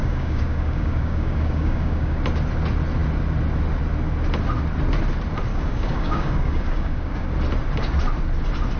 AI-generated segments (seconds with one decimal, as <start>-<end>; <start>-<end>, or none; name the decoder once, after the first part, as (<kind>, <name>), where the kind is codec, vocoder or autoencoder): 0.0-2.2 (codec, DAC); 5.5-7.3